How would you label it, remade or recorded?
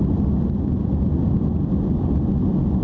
recorded